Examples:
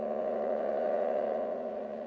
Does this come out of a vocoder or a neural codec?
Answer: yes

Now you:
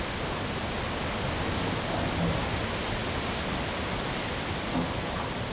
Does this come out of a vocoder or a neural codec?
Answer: no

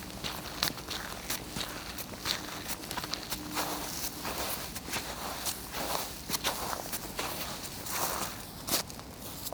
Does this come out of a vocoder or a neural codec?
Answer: no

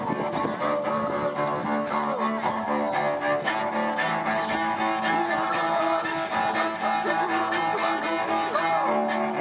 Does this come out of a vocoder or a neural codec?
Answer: no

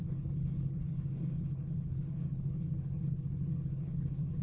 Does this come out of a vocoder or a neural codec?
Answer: yes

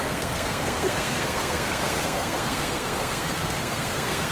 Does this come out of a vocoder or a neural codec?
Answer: yes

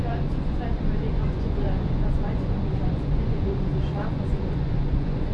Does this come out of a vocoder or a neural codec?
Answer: yes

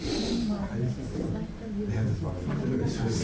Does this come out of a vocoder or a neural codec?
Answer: no